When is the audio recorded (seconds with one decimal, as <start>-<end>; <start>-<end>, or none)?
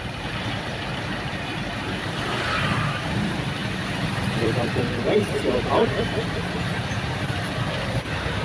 none